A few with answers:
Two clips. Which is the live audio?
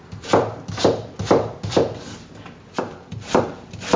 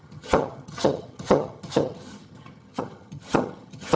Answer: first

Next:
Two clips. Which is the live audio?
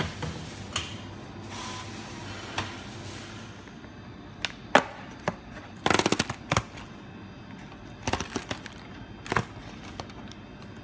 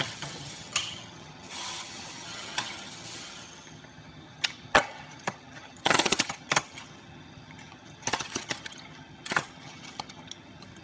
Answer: first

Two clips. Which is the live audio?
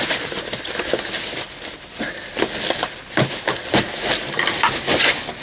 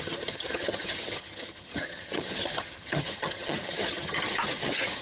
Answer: first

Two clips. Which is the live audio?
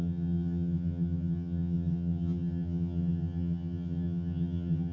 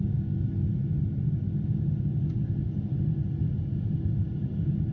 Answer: second